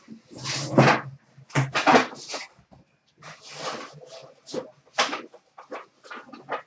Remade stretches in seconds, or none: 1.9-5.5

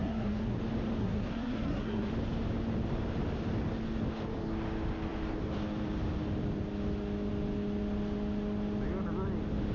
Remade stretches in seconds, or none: 0.0-0.6; 1.0-2.1

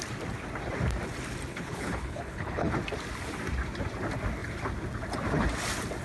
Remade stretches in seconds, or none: 1.5-2.7